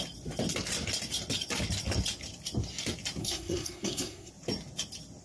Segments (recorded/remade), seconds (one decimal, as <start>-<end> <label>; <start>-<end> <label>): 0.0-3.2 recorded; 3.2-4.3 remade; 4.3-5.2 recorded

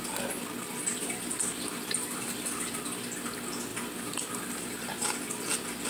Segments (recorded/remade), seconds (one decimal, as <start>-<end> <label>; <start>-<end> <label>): 0.0-0.9 recorded; 0.9-2.7 remade; 2.7-3.7 recorded; 3.7-5.0 remade; 5.0-5.9 recorded

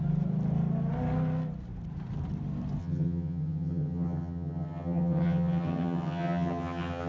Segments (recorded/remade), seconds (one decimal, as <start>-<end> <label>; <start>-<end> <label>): 0.0-2.8 recorded; 2.8-7.1 remade

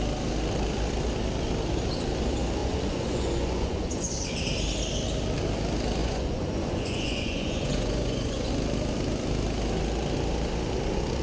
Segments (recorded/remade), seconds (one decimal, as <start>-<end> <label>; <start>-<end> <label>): 0.0-2.6 recorded; 2.6-4.1 remade; 4.1-6.0 recorded; 6.0-8.5 remade; 8.5-11.2 recorded

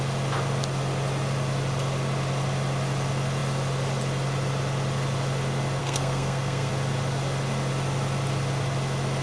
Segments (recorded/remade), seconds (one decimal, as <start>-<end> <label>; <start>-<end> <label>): 0.0-5.8 recorded; 5.8-6.7 remade; 6.7-9.2 recorded